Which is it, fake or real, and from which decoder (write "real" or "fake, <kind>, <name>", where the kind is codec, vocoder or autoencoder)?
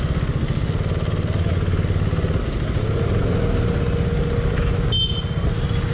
real